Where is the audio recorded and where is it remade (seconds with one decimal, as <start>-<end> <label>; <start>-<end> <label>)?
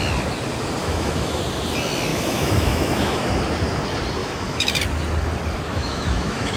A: 0.0-0.8 recorded; 0.8-1.4 remade; 1.4-2.1 recorded; 2.1-3.2 remade; 3.2-4.2 recorded; 4.2-4.8 remade; 4.8-5.7 recorded; 5.7-6.6 remade